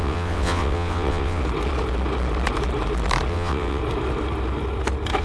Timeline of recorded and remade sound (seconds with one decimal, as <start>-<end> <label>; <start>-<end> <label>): 0.0-1.4 remade; 1.4-3.3 recorded; 3.3-3.8 remade; 3.8-5.2 recorded